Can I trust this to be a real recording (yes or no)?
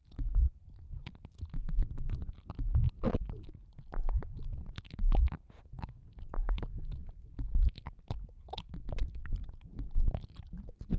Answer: yes